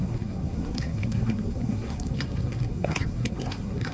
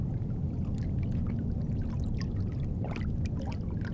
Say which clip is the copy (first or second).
first